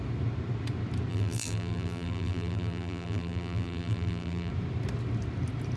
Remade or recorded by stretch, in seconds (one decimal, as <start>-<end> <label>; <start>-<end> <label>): 0.0-1.1 recorded; 1.1-4.5 remade; 4.5-5.8 recorded